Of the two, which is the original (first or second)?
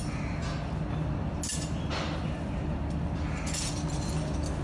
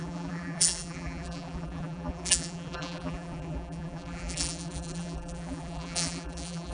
first